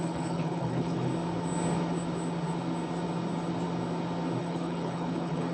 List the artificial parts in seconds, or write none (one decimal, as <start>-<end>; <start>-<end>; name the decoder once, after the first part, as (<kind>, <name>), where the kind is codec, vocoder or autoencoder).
0.0-1.1 (codec, HILCodec); 4.4-5.5